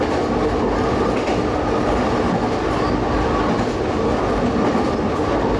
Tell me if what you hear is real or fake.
real